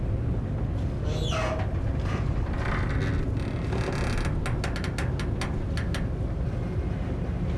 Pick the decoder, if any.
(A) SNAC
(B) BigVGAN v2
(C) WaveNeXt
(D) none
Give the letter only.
D